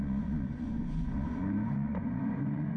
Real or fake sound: fake